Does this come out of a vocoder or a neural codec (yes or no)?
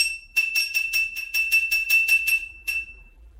yes